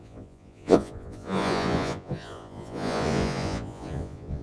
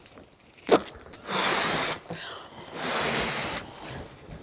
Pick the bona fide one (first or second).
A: second